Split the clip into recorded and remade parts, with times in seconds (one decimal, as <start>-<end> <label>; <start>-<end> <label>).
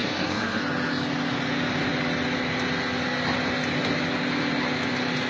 0.0-0.6 remade; 0.6-5.3 recorded